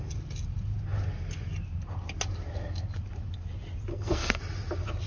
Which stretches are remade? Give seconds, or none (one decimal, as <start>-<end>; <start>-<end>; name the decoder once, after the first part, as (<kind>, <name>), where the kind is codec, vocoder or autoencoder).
3.9-4.4 (codec, SNAC)